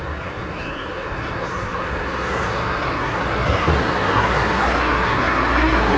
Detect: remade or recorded remade